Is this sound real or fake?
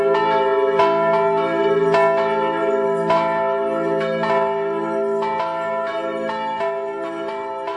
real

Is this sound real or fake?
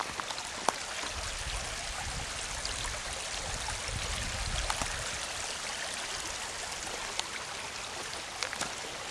real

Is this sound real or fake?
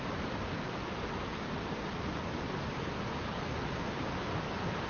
real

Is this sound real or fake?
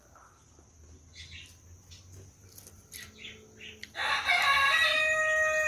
real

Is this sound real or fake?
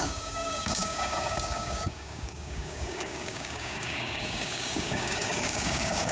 fake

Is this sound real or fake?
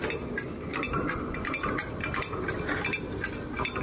real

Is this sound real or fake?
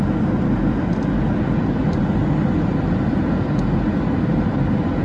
real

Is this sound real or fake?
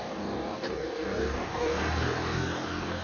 fake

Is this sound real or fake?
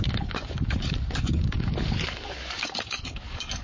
fake